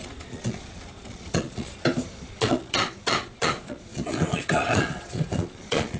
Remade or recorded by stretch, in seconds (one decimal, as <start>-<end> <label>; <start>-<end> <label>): 0.0-1.7 remade; 1.7-2.3 recorded; 2.3-6.0 remade